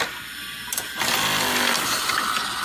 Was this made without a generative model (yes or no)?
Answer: yes